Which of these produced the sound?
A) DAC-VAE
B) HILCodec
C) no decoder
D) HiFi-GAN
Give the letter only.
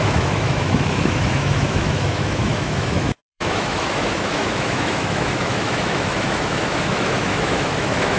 A